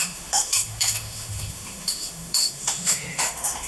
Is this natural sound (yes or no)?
no